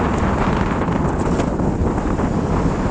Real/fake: real